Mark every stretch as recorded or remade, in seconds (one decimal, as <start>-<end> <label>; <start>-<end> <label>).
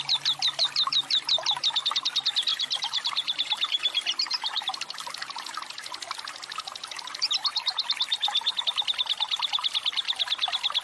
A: 0.0-2.5 recorded; 2.5-4.7 remade; 4.7-10.8 recorded